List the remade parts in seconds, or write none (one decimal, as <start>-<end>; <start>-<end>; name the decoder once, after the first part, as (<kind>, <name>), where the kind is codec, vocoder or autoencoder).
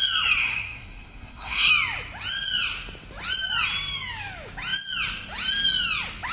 0.4-1.7 (codec, SNAC)